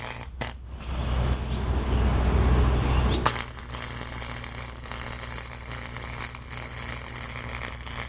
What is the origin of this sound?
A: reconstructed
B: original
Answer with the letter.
B